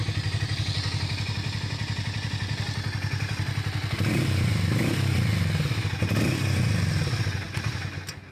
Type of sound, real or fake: real